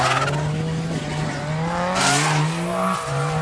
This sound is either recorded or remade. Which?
recorded